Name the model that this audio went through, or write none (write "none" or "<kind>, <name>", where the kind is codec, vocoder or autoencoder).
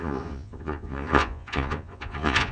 vocoder, Vocos